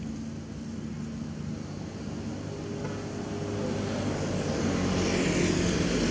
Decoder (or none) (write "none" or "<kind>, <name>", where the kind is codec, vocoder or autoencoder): none